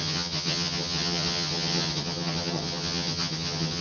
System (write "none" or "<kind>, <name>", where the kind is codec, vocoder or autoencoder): vocoder, HiFi-GAN